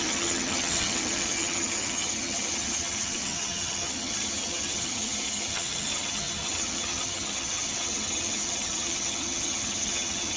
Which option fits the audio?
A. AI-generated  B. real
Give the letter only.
A